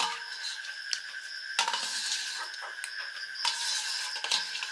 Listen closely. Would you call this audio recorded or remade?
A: recorded